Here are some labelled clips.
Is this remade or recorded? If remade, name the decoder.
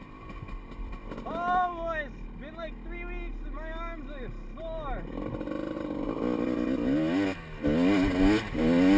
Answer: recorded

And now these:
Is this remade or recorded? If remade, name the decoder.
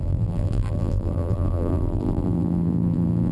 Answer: remade, vocoder, BigVGAN v2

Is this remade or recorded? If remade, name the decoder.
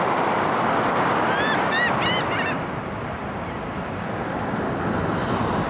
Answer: remade, vocoder, BigVGAN v2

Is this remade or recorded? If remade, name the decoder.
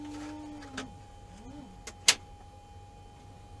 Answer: recorded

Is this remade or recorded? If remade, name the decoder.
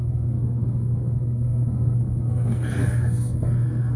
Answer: remade, codec, SNAC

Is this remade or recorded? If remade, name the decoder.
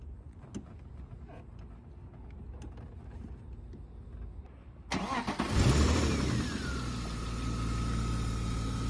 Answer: recorded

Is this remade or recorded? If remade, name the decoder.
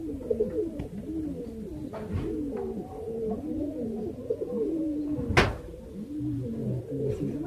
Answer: recorded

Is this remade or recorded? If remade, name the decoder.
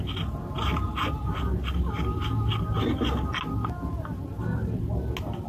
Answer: recorded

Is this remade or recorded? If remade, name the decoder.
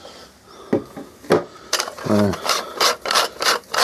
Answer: recorded